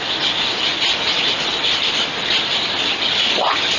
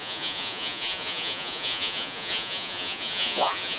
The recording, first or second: first